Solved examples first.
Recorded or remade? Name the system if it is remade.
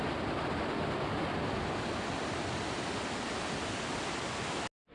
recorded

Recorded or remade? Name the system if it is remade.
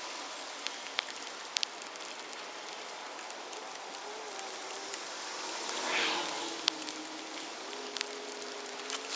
recorded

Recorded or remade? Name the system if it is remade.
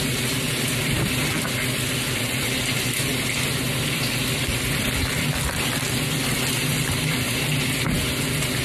remade, vocoder, BigVGAN v2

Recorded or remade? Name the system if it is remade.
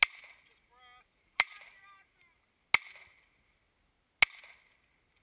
recorded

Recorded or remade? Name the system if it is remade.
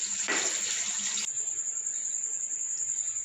recorded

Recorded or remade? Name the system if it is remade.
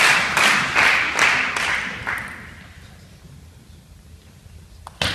recorded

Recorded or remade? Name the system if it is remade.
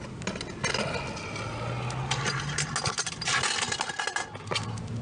recorded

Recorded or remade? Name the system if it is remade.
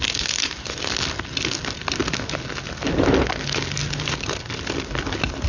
recorded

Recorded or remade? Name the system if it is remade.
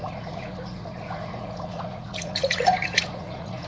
remade, vocoder, Vocos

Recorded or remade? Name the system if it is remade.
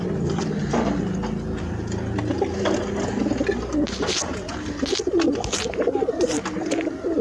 recorded